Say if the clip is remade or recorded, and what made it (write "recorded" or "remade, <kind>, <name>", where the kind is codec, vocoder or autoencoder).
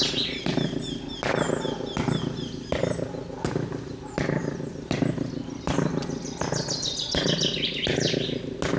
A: recorded